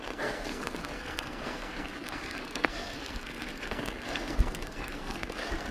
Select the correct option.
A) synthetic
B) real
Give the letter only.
A